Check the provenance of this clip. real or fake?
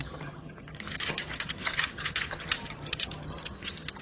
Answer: fake